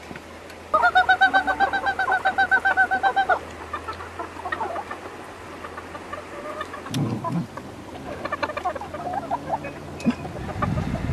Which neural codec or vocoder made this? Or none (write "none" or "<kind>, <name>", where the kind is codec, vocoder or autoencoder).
none